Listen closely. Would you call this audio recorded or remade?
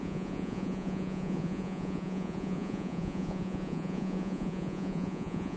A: remade